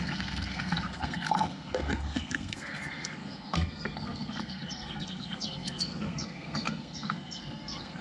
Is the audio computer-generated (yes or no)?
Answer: yes